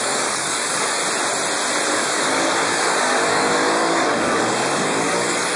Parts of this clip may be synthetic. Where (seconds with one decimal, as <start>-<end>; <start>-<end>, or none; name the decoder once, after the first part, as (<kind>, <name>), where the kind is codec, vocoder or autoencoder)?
0.0-1.0 (codec, DAC); 1.9-5.6